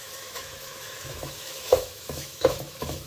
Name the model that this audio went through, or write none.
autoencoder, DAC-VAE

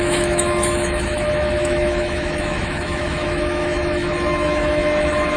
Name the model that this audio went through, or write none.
autoencoder, DAC-VAE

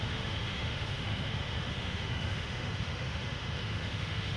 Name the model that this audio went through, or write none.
autoencoder, DAC-VAE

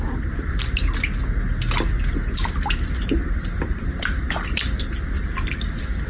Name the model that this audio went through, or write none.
none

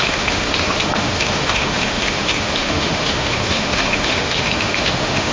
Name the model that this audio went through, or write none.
autoencoder, DAC-VAE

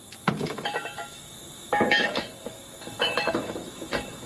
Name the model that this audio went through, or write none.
autoencoder, DAC-VAE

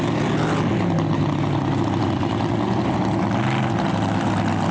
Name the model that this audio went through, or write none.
none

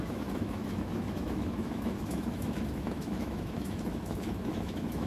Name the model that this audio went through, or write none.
autoencoder, DAC-VAE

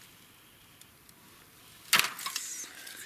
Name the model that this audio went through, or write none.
none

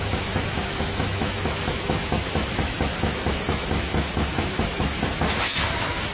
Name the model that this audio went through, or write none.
autoencoder, DAC-VAE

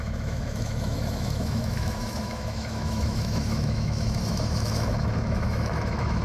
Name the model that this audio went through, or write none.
autoencoder, DAC-VAE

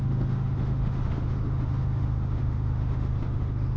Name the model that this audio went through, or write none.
autoencoder, DAC-VAE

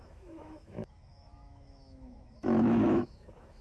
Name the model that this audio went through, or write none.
autoencoder, DAC-VAE